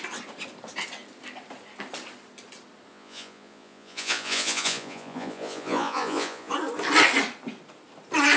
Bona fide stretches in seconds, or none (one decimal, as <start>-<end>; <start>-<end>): 0.0-2.9; 6.5-8.4